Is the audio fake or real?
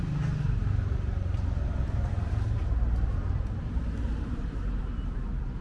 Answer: real